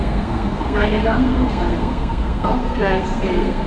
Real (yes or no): no